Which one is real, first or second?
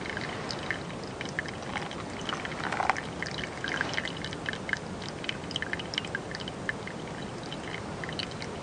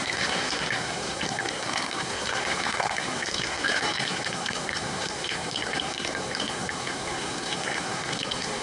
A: first